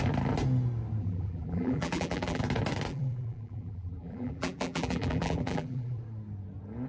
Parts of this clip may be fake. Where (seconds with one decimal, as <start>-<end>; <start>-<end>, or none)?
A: 1.0-2.4; 2.9-6.0